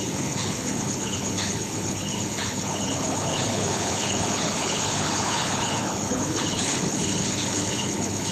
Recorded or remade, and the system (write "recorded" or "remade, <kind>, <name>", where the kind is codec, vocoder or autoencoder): remade, codec, HILCodec